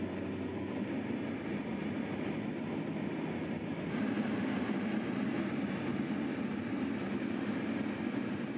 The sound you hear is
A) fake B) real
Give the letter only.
B